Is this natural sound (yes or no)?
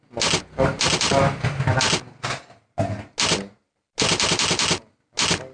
yes